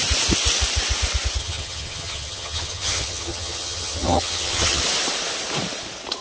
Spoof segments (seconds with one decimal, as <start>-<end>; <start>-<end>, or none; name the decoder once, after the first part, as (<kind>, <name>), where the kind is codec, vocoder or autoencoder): 1.4-4.8 (vocoder, HiFi-GAN)